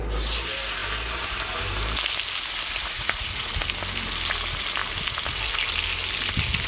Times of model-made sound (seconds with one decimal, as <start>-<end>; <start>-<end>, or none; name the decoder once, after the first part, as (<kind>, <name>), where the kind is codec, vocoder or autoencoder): 2.8-3.5 (vocoder, Vocos)